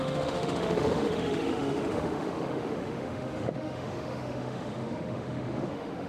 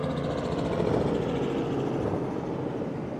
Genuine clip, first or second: second